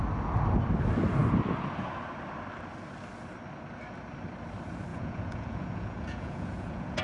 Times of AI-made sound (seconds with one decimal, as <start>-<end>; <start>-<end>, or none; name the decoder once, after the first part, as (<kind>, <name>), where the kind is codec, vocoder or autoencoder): 4.9-7.0 (vocoder, Vocos)